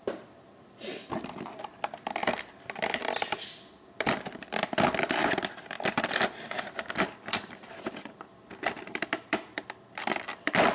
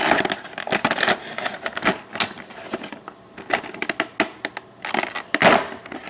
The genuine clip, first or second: second